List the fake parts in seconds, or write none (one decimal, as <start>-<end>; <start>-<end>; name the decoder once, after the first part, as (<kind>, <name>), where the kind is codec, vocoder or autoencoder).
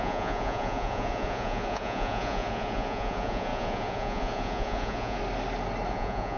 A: 0.0-5.2 (vocoder, Vocos); 5.9-6.4